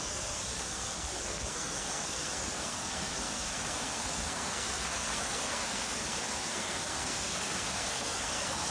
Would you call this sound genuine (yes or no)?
no